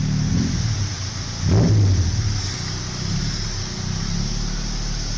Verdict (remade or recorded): recorded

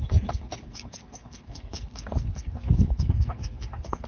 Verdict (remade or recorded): remade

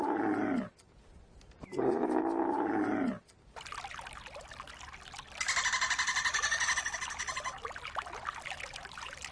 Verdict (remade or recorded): recorded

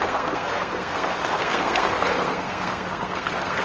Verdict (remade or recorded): remade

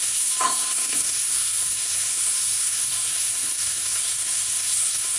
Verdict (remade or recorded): remade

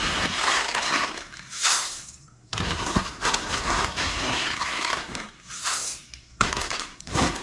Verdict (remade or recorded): remade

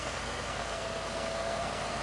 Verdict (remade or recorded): remade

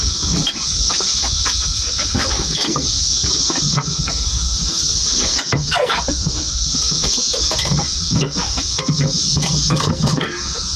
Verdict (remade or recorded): remade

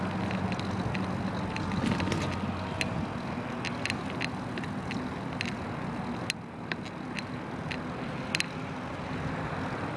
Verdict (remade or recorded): recorded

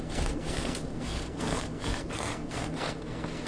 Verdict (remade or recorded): remade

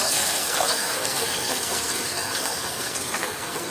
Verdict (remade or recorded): remade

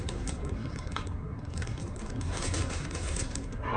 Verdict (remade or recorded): remade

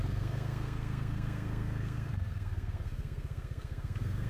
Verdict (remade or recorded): remade